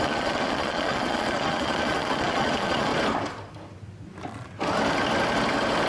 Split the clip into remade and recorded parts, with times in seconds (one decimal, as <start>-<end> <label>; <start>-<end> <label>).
0.0-2.9 remade; 2.9-5.9 recorded